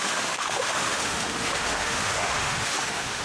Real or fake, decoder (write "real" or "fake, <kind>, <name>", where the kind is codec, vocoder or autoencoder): fake, autoencoder, DAC-VAE